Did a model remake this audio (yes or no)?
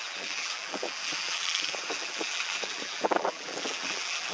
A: yes